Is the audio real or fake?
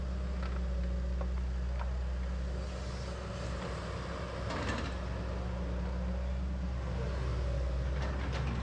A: real